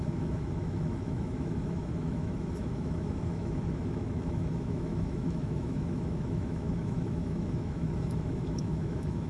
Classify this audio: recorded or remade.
remade